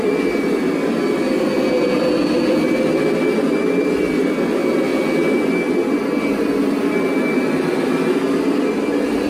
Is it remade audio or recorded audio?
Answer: recorded